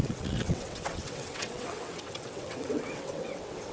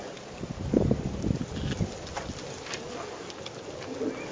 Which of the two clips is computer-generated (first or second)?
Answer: first